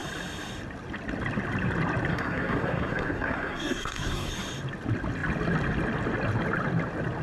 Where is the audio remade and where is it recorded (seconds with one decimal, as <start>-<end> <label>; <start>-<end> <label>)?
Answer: 0.0-2.1 recorded; 2.1-4.3 remade; 4.3-7.2 recorded